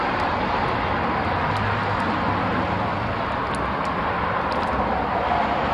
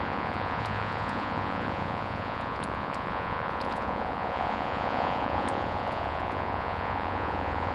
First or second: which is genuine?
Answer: first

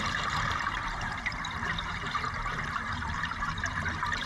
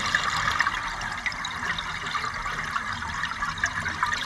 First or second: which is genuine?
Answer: second